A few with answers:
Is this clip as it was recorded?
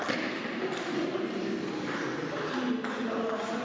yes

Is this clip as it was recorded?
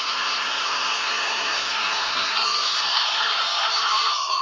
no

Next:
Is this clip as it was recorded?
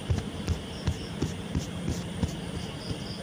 yes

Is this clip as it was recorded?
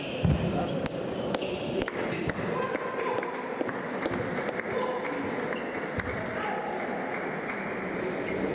yes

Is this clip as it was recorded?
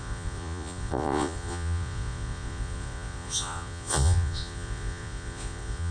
no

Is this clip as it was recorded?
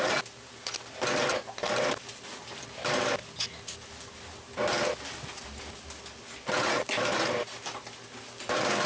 yes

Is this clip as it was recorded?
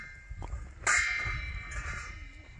yes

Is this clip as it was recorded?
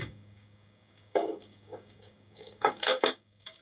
no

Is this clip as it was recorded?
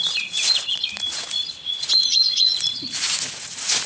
no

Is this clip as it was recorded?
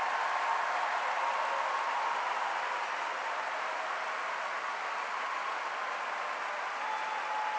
yes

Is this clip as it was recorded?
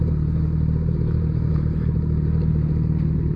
yes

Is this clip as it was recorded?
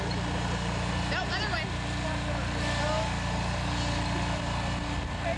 yes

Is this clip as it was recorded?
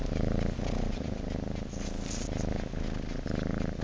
yes